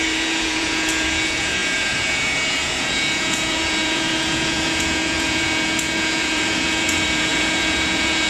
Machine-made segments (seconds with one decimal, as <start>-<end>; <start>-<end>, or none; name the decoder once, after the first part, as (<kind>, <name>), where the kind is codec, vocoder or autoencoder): 0.0-8.3 (vocoder, Vocos)